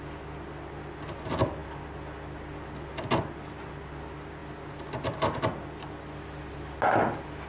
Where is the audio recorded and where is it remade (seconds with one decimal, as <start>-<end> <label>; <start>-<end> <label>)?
0.0-7.5 recorded